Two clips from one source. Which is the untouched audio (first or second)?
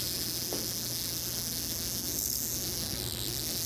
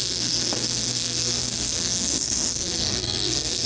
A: first